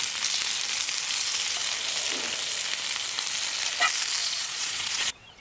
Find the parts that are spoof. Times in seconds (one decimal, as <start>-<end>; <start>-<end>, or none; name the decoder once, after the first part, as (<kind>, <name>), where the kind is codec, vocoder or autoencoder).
4.2-5.4 (vocoder, Vocos)